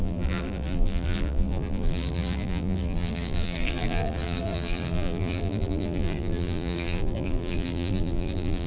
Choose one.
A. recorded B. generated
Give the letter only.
B